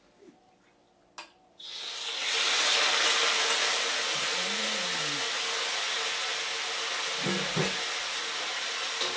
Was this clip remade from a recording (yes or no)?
no